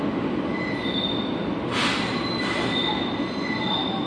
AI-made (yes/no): no